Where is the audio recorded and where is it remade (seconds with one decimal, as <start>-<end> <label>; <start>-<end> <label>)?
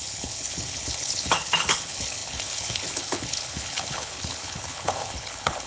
0.0-5.7 remade